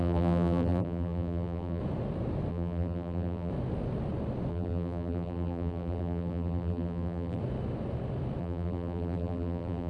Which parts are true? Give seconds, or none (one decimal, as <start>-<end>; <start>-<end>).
1.8-2.5; 3.5-4.5; 7.4-8.4